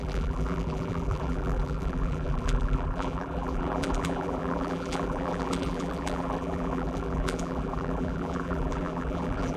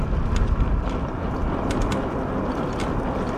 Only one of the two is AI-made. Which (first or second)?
first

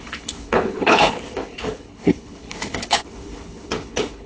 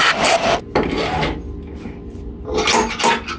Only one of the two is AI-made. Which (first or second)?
first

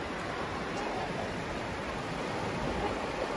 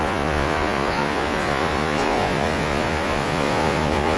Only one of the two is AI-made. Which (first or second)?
second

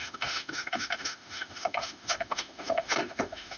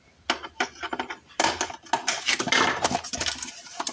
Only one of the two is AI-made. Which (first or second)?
first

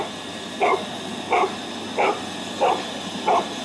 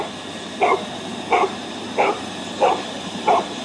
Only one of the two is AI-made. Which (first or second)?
second